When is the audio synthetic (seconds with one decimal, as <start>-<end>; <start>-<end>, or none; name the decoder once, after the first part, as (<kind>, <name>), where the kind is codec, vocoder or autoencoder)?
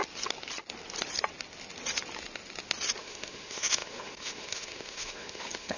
3.0-5.8 (autoencoder, DAC-VAE)